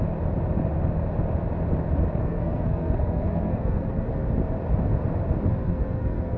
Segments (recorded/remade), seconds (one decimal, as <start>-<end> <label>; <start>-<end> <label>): 0.0-2.2 recorded; 2.2-4.1 remade; 4.1-5.5 recorded; 5.5-6.4 remade